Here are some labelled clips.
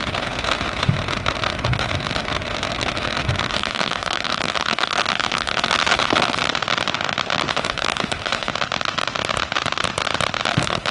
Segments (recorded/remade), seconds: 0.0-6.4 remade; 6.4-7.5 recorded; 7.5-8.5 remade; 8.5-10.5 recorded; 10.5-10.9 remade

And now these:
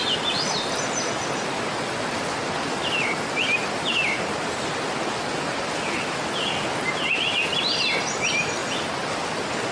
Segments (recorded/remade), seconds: 0.0-9.7 recorded

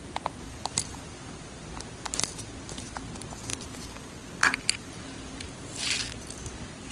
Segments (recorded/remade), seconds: 0.0-6.9 recorded

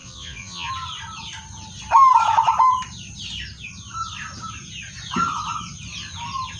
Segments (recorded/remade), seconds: 0.0-0.7 remade; 0.7-6.6 recorded

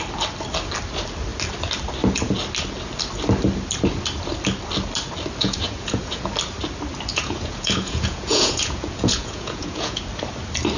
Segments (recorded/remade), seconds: 0.0-5.4 recorded; 5.4-6.3 remade; 6.3-7.1 recorded; 7.1-10.0 remade; 10.0-10.8 recorded

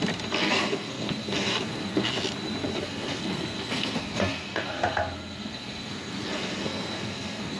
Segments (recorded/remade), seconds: 0.0-0.4 recorded; 0.4-2.1 remade; 2.1-2.7 recorded; 2.7-7.6 remade